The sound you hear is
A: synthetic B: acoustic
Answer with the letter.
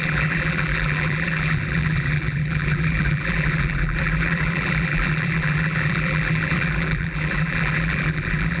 A